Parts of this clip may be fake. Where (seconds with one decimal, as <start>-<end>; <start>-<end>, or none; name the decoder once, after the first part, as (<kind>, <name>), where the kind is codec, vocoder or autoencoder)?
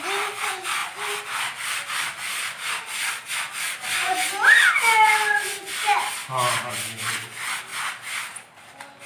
none